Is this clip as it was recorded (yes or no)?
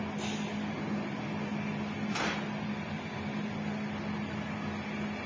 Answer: yes